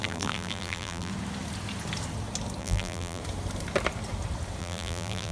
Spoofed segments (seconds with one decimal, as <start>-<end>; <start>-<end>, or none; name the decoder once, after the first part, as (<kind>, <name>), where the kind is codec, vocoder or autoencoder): 0.0-1.1 (vocoder, BigVGAN v2); 2.6-3.2; 4.6-5.3